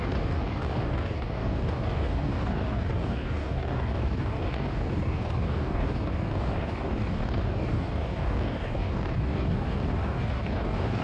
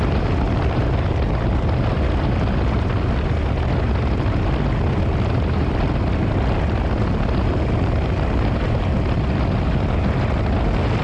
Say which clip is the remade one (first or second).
first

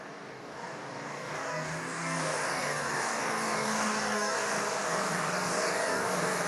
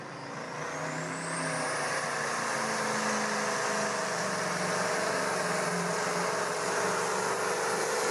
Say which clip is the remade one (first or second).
first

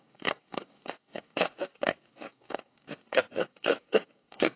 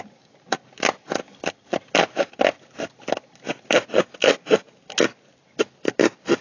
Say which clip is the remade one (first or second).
first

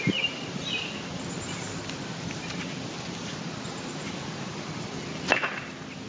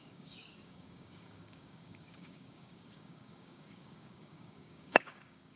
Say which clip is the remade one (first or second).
second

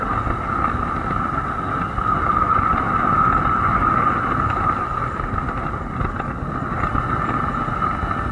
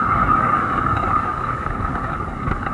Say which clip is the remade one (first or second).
second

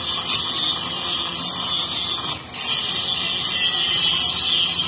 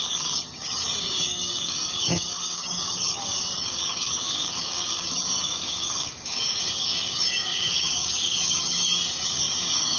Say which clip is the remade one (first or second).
second